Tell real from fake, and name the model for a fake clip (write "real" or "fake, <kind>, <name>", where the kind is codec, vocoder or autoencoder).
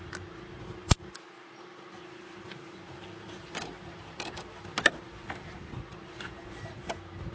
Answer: real